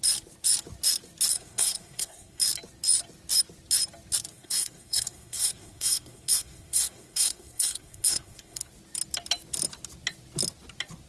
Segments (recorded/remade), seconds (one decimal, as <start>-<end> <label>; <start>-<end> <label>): 0.0-1.3 recorded; 1.3-2.4 remade; 2.4-4.3 recorded; 4.3-8.7 remade; 8.7-11.1 recorded